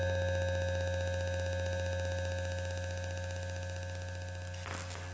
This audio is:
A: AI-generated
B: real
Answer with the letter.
B